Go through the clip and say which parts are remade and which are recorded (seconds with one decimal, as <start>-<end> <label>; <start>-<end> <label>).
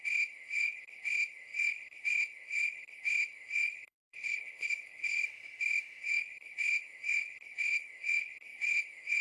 0.0-5.2 remade; 5.2-6.0 recorded; 6.0-9.2 remade